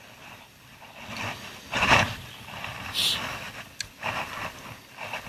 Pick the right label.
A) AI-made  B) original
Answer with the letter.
B